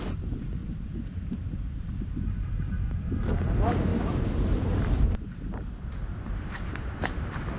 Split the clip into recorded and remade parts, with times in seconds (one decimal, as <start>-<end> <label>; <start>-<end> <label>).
0.0-0.6 recorded; 0.6-1.9 remade; 1.9-3.9 recorded; 3.9-6.5 remade; 6.5-7.6 recorded